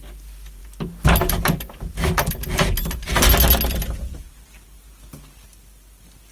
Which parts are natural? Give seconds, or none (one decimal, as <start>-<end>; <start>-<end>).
0.0-6.3